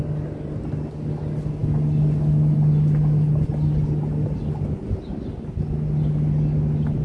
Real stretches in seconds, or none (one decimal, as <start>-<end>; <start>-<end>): 0.0-7.0